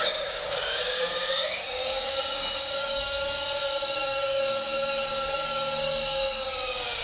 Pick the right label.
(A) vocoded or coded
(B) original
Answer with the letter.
A